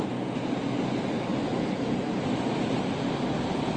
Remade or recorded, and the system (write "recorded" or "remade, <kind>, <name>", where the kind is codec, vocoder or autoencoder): recorded